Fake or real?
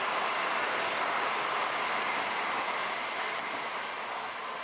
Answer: real